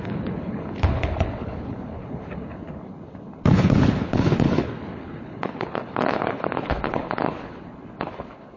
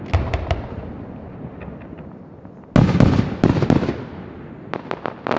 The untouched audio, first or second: second